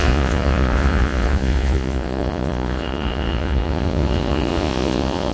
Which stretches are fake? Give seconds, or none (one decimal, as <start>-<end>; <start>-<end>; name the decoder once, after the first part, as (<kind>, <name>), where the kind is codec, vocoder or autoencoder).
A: 0.0-5.3 (vocoder, Vocos)